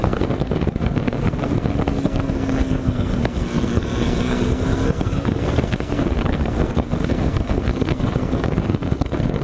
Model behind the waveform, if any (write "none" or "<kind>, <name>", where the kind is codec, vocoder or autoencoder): codec, SNAC